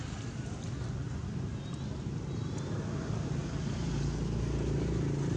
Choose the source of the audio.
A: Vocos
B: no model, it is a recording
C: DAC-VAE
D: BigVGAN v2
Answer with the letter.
B